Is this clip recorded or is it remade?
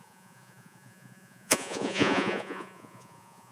remade